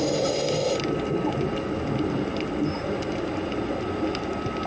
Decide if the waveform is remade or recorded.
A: recorded